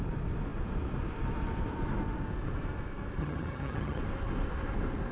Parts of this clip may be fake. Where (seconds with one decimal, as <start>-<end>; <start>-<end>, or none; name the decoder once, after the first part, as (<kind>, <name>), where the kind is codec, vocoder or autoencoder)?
3.2-4.0 (vocoder, HiFi-GAN)